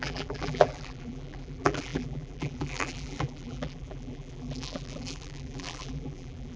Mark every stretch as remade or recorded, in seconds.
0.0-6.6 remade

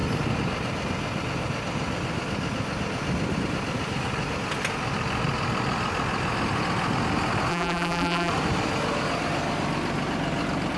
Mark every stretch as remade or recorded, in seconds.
0.0-7.5 recorded; 7.5-8.3 remade; 8.3-10.8 recorded

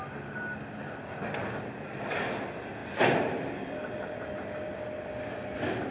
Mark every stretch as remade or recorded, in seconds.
0.0-5.9 recorded

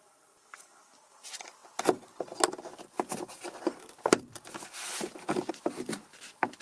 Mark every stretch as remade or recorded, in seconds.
0.0-6.6 recorded